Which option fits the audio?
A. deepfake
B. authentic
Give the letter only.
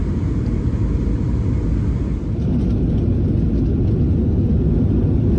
B